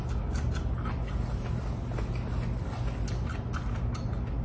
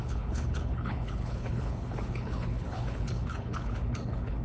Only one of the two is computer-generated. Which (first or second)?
second